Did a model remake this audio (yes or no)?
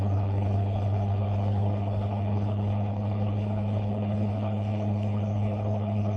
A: yes